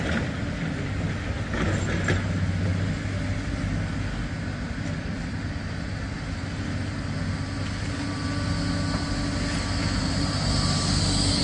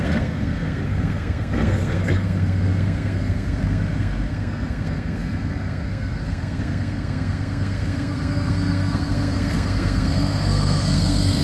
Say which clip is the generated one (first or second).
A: second